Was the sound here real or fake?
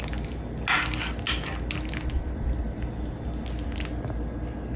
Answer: real